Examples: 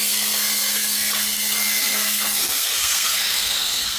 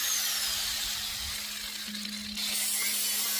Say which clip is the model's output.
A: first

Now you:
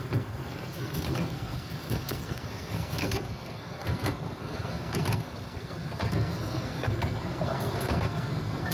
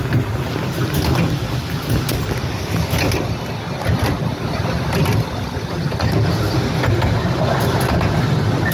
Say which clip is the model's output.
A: first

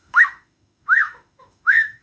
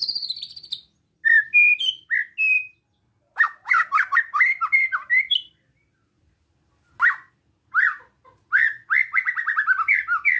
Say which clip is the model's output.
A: first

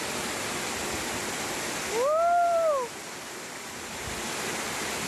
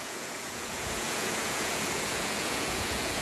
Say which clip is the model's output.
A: second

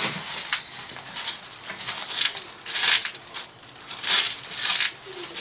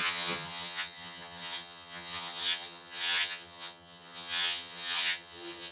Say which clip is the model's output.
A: second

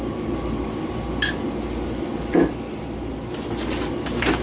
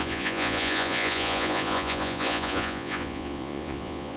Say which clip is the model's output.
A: second